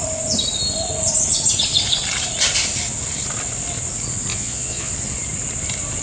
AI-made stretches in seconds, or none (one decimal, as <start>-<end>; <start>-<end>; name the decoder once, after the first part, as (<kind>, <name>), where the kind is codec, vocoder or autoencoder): 4.3-4.9 (vocoder, Vocos)